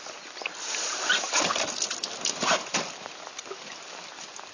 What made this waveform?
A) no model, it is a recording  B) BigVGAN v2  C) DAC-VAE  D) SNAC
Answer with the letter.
A